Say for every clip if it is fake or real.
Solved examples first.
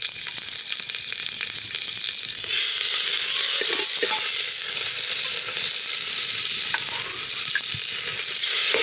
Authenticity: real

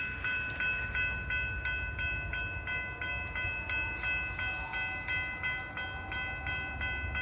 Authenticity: real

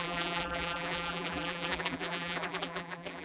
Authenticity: fake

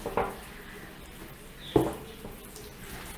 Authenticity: real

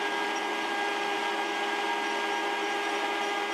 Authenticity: real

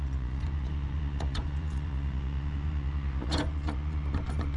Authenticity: fake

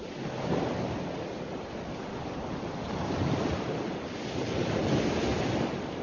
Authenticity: real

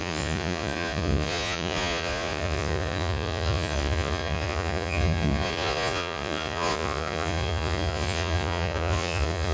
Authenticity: fake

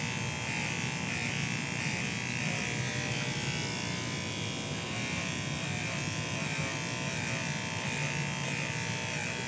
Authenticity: real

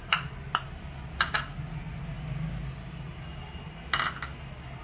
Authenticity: real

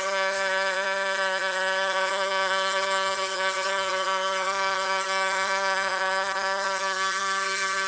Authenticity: fake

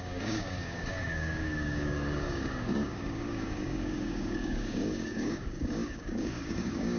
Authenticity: fake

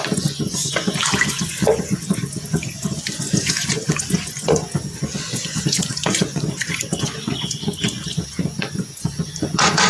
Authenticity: fake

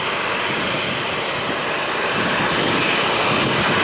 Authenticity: real